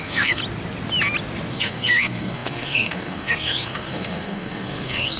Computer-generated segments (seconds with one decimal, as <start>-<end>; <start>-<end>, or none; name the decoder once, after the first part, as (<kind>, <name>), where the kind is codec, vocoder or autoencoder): 0.0-0.4 (codec, SNAC); 1.5-5.2